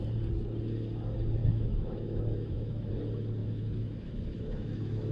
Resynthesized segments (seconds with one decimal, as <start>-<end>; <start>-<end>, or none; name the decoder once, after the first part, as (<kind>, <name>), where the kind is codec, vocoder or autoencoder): 1.4-2.9 (autoencoder, DAC-VAE); 3.4-5.1